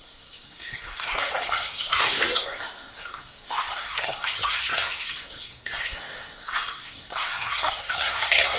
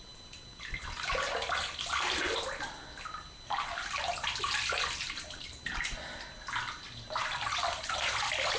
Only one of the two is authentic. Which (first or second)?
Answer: second